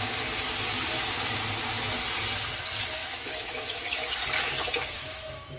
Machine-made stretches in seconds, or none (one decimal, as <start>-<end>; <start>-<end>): 3.0-4.1; 4.6-5.6